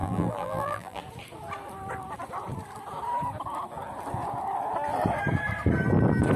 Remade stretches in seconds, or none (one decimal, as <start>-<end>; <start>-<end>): 0.0-1.0